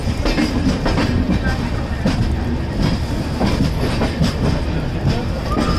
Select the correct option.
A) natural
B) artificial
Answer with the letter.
A